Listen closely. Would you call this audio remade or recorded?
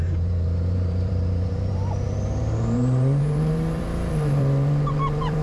remade